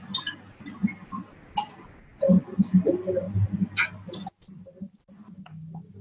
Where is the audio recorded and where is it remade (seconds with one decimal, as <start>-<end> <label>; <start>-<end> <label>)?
0.0-6.0 recorded